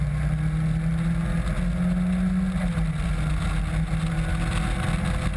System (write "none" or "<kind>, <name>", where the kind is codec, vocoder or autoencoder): none